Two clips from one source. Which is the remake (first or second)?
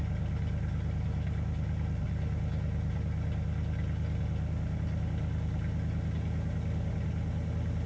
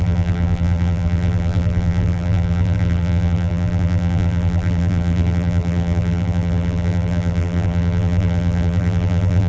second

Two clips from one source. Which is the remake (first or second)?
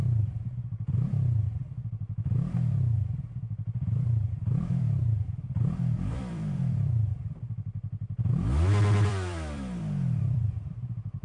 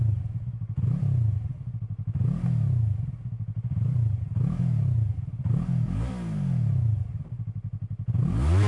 first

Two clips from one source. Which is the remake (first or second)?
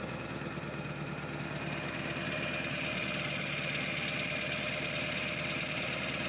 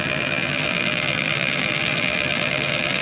second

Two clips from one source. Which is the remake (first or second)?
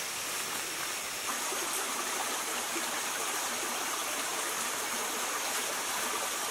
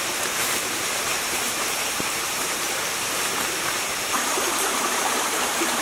second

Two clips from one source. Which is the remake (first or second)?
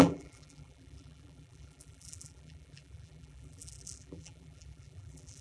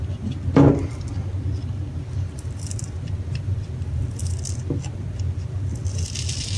first